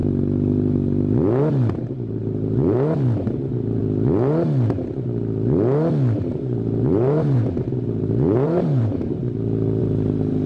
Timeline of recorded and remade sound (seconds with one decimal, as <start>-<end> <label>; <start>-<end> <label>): 0.0-1.7 recorded; 1.7-3.8 remade; 3.8-6.4 recorded; 6.4-9.2 remade; 9.2-9.8 recorded; 9.8-10.5 remade